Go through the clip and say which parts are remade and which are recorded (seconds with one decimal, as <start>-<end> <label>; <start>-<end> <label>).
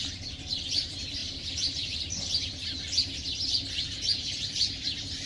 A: 0.0-5.3 remade